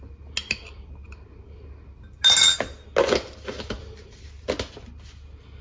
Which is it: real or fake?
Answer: real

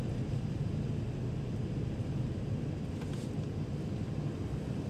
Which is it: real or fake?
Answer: real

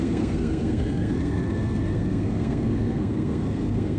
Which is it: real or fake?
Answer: fake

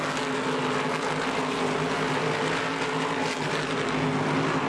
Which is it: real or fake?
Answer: real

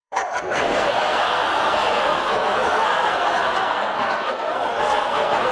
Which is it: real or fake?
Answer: fake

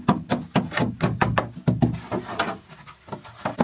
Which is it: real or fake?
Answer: real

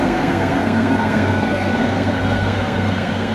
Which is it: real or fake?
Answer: fake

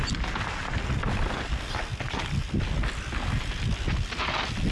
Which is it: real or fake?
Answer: real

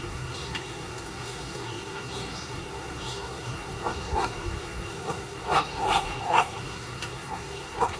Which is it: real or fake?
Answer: fake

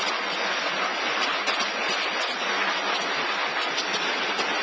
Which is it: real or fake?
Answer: real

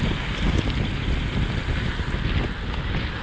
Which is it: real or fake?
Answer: real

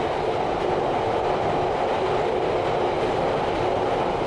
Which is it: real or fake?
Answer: real